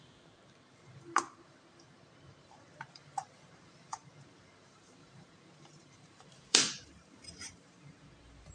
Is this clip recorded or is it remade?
remade